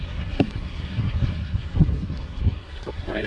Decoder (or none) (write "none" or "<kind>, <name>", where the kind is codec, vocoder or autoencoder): codec, SNAC